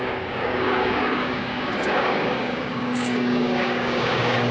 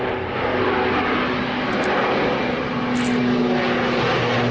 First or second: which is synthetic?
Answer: first